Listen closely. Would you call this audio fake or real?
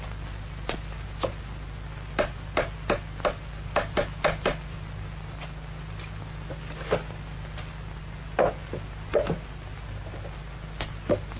real